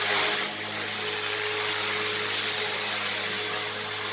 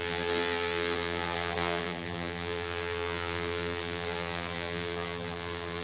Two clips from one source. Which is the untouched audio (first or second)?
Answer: first